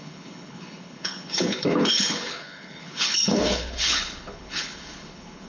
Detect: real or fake fake